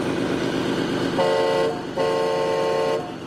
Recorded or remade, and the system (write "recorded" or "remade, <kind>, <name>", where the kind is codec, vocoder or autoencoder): recorded